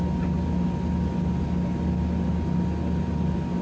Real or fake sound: real